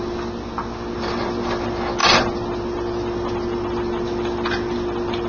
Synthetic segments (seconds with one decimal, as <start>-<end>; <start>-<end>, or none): none